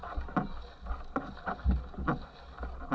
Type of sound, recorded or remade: recorded